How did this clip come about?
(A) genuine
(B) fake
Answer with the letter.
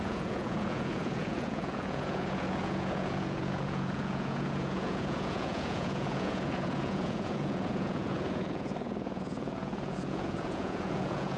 B